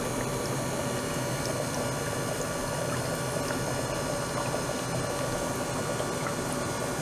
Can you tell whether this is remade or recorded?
recorded